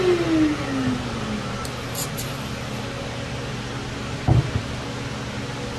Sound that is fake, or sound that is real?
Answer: real